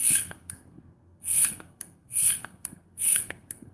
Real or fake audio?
fake